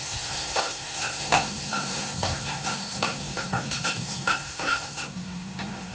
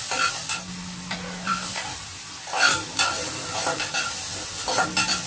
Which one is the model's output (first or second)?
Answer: first